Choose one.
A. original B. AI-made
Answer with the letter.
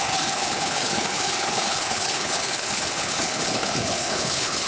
B